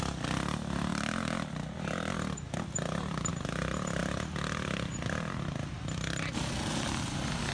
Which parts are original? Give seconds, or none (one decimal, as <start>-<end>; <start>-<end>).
0.0-7.5